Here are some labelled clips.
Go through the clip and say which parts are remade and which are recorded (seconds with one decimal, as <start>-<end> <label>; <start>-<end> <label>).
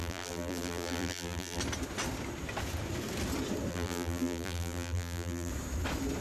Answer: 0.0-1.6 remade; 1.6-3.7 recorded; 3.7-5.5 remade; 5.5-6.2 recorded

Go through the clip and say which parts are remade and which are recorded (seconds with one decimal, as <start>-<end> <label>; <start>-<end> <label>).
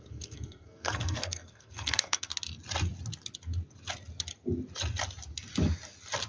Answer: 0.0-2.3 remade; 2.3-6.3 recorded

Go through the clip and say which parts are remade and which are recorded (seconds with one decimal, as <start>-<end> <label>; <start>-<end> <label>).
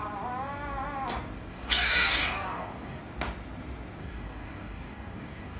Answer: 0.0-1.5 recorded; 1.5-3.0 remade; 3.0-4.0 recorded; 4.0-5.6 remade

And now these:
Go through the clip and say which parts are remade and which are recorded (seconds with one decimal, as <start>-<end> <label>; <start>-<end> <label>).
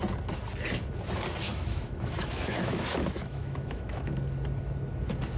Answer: 0.0-1.5 recorded; 1.5-4.1 remade; 4.1-5.4 recorded